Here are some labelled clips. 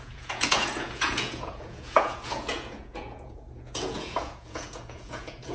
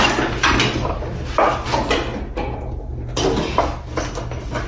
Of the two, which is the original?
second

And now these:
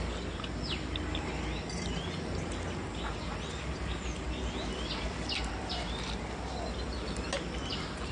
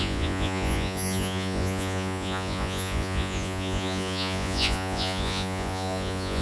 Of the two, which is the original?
first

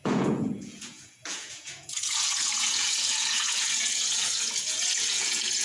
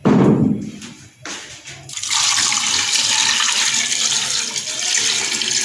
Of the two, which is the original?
second